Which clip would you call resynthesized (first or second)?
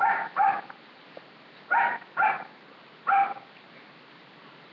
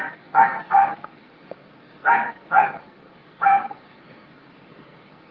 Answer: second